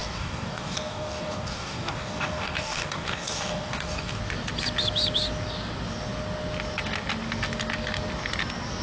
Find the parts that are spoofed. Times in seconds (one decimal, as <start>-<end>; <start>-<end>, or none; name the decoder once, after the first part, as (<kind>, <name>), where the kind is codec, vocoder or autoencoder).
0.0-4.2 (codec, DAC)